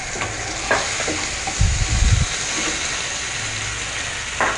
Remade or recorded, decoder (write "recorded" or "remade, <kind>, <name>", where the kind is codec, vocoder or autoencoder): recorded